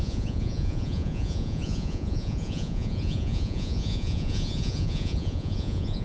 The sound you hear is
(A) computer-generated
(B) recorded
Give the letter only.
A